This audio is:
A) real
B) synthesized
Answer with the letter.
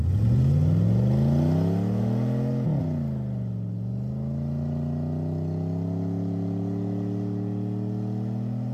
A